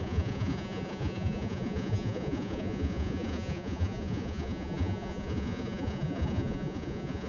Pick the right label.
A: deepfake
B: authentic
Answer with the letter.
A